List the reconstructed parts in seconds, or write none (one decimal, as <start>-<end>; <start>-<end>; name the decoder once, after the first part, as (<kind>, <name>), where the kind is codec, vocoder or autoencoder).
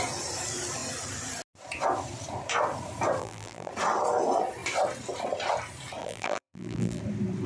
3.2-3.7 (vocoder, BigVGAN v2); 6.0-7.0